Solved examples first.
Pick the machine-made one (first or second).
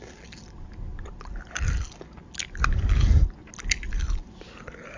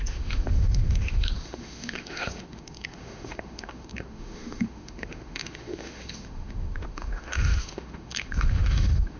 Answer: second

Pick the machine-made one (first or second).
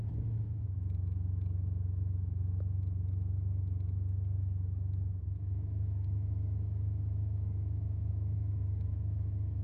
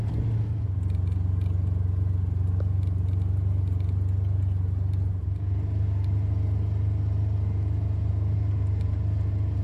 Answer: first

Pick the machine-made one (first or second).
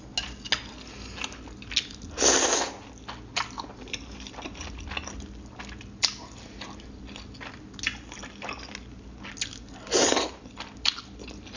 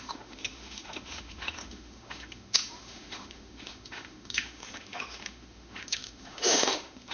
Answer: second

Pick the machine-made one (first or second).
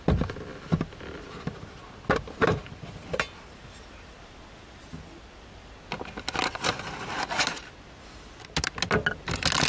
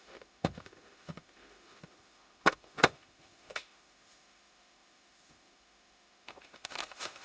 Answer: second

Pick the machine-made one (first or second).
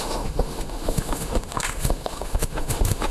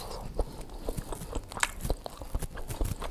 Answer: first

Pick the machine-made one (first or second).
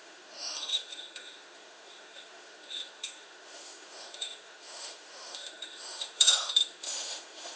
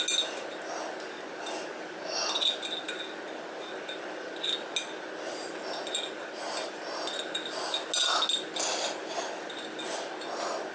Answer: first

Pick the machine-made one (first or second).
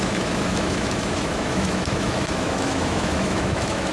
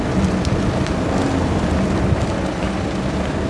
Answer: first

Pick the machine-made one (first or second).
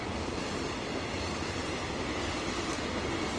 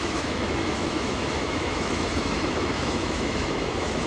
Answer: second